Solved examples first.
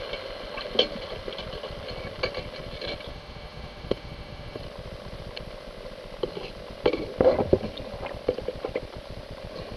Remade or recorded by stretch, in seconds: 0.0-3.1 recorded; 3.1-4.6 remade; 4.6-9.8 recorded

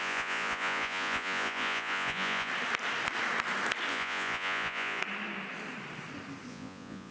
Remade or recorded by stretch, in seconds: 0.0-2.5 remade; 2.5-3.9 recorded; 3.9-5.0 remade; 5.0-6.5 recorded; 6.5-7.1 remade

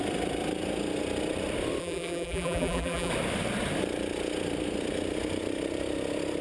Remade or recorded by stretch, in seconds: 0.0-1.8 recorded; 1.8-3.1 remade; 3.1-6.4 recorded

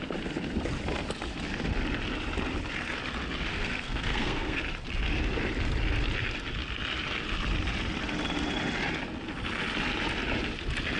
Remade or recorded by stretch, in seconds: 0.0-3.5 recorded; 3.5-4.6 remade; 4.6-11.0 recorded

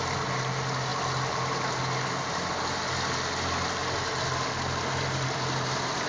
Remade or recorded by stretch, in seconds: 0.0-6.1 recorded

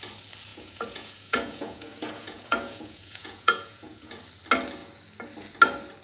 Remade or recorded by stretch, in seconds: 0.0-0.5 recorded; 0.5-4.1 remade; 4.1-6.0 recorded